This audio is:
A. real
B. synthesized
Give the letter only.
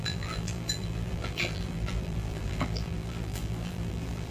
B